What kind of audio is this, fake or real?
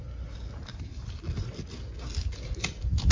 real